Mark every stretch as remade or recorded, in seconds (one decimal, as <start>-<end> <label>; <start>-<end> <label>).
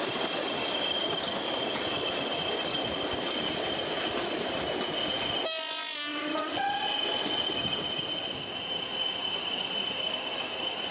0.0-6.1 recorded; 6.1-6.9 remade; 6.9-10.9 recorded